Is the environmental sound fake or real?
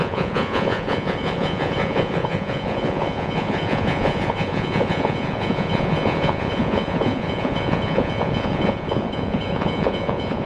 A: fake